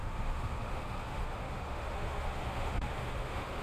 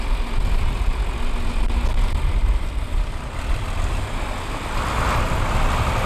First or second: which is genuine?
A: second